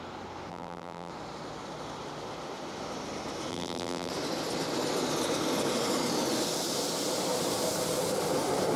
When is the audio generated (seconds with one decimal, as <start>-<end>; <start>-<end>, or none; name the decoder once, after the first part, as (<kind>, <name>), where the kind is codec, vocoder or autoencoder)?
0.5-1.1 (vocoder, BigVGAN v2); 3.5-4.1